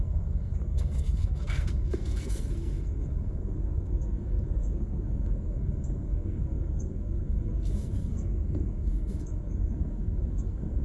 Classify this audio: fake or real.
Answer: fake